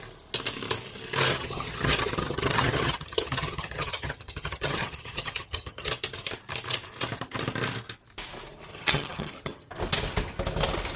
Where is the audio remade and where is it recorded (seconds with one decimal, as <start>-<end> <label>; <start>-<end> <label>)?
0.0-1.3 recorded; 1.3-5.9 remade; 5.9-8.7 recorded; 8.7-9.7 remade; 9.7-11.0 recorded